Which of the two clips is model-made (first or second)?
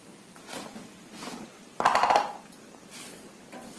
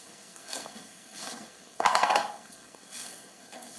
second